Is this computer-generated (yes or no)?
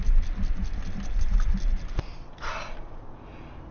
no